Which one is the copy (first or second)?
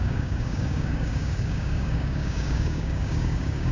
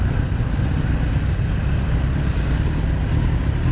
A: first